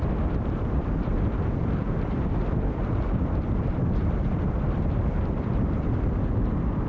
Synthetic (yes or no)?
yes